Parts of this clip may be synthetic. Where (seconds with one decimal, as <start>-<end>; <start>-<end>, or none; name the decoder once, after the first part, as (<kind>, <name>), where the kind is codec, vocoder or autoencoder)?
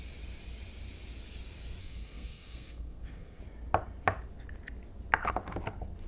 1.8-3.4 (codec, SNAC)